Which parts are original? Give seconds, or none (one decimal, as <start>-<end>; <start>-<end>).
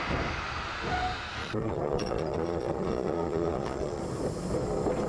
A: 0.0-1.4; 4.0-5.1